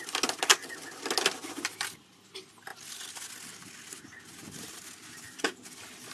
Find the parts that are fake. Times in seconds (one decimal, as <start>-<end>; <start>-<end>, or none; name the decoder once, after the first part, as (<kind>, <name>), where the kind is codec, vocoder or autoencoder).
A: 4.4-6.1 (vocoder, BigVGAN v2)